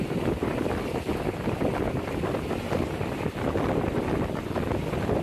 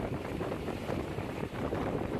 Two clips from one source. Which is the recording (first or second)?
first